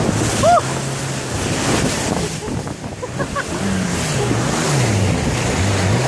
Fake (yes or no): no